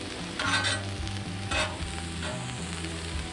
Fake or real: real